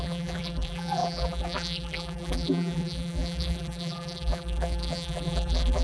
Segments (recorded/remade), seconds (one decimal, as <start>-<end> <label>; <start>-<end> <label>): 0.0-5.8 remade